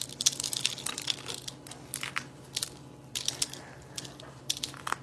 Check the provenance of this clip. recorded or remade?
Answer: recorded